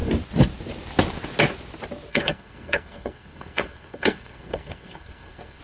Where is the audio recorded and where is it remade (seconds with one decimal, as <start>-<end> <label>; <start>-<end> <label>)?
0.0-2.1 recorded; 2.1-5.6 remade